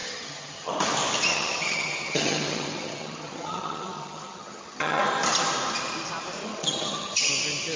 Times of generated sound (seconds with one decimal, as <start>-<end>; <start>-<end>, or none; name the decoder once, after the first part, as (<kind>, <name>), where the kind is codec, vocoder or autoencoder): 0.0-0.7 (vocoder, HiFi-GAN); 1.3-5.0; 6.4-7.3